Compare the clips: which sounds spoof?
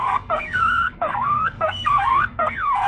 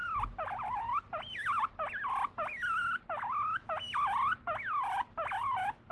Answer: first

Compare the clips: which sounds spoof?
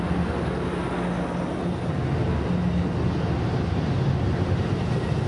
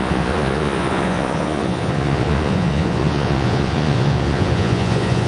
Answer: second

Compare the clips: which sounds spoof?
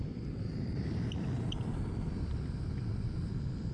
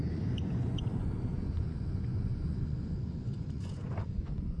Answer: second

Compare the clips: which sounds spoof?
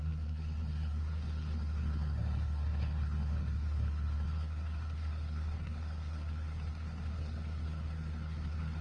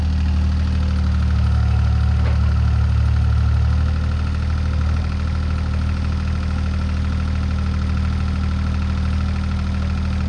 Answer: first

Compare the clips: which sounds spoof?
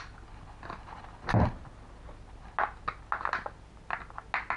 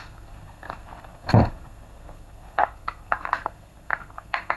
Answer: second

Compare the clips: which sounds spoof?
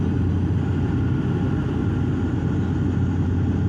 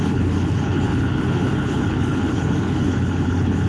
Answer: second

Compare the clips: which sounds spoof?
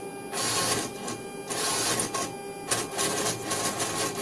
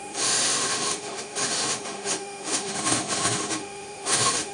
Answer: second